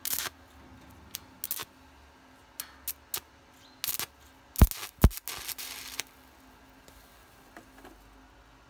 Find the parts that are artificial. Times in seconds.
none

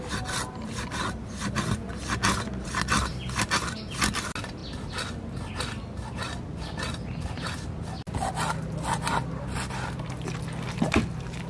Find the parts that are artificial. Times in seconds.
none

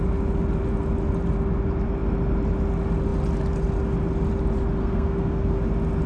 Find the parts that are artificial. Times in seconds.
4.8-5.6 (codec, SNAC)

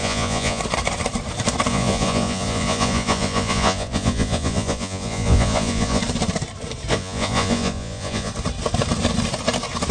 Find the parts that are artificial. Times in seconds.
0.0-0.6 (vocoder, Vocos); 1.7-6.0; 6.9-8.3

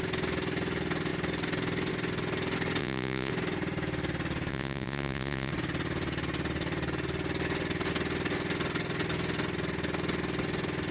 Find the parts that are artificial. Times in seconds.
2.8-3.3 (vocoder, Vocos); 4.5-5.5